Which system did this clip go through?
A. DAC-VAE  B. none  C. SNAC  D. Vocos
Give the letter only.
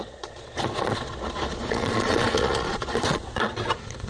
D